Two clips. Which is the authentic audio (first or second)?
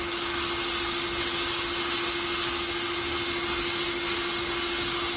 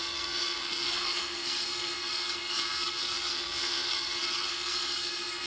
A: first